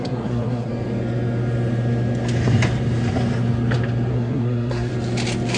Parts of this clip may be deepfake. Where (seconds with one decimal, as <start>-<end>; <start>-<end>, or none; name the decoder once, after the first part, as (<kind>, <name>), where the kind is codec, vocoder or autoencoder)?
0.0-0.7 (codec, SNAC); 4.1-4.9